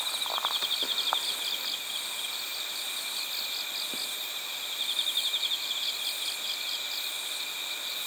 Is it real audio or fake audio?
real